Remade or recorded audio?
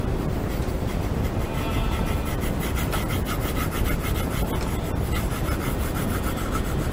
recorded